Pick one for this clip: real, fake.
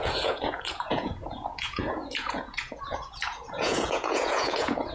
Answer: fake